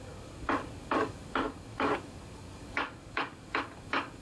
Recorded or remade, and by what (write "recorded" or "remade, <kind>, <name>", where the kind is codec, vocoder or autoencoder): remade, codec, DAC